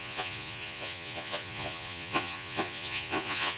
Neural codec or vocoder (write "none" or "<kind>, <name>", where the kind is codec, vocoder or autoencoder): vocoder, Vocos